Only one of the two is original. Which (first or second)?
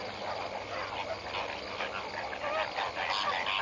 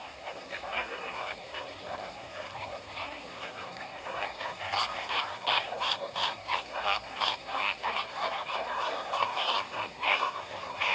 first